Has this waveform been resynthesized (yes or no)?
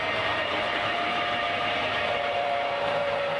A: yes